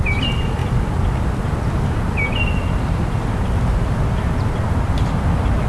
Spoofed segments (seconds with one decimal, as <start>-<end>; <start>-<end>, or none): none